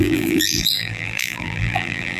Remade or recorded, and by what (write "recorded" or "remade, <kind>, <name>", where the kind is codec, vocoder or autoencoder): remade, vocoder, BigVGAN v2